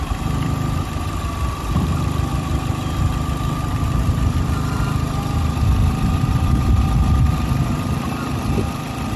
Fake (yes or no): yes